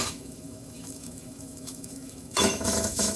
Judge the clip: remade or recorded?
remade